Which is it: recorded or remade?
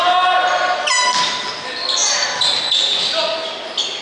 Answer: recorded